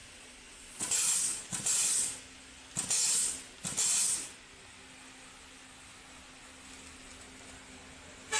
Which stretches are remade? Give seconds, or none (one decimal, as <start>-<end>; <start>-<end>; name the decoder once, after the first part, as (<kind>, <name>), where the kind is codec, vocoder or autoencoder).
0.0-0.9 (vocoder, Vocos)